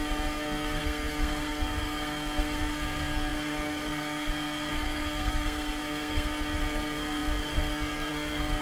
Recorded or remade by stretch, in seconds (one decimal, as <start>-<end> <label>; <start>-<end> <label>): 0.0-8.6 remade